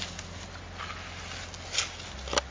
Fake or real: real